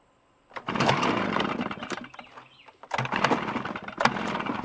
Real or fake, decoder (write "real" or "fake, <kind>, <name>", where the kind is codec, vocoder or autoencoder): real